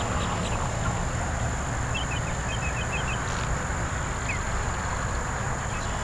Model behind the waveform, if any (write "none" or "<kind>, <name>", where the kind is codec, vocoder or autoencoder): none